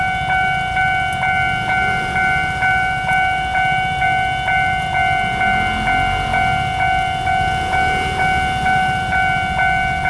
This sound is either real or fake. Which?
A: real